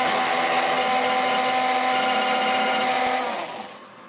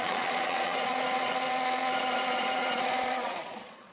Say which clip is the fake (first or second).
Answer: second